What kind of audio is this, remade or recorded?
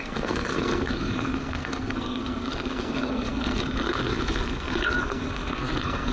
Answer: remade